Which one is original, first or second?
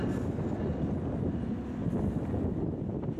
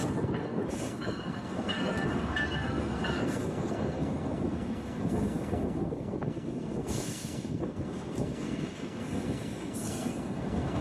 first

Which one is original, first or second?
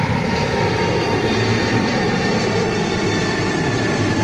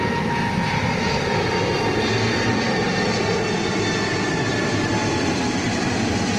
second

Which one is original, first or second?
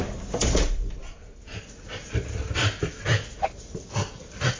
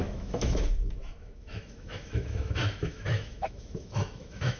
first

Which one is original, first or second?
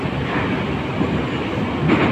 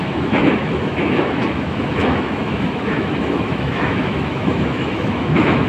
first